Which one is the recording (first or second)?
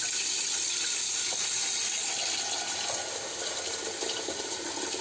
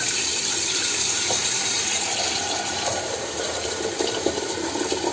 first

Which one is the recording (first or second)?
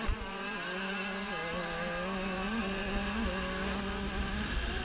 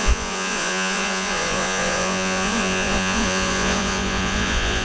first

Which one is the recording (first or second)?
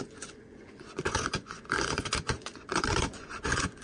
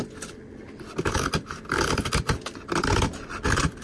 second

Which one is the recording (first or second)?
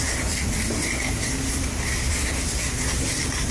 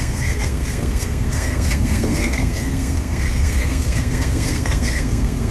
first